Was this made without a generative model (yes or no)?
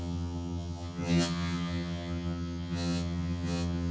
no